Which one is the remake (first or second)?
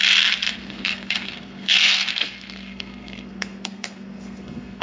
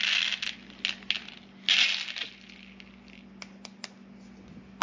first